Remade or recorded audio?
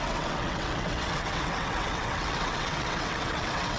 remade